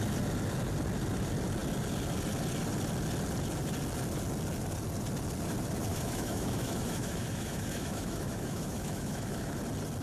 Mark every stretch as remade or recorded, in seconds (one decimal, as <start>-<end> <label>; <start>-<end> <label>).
0.0-5.9 recorded; 5.9-9.6 remade; 9.6-10.0 recorded